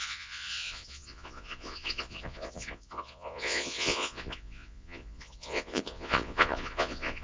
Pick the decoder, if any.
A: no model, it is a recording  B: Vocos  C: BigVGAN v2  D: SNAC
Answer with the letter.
B